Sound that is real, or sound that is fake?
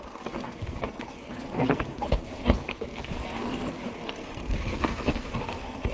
fake